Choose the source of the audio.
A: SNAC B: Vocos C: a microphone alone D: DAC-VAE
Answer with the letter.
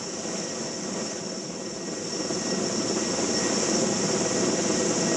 C